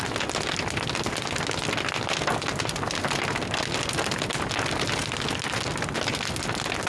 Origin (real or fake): real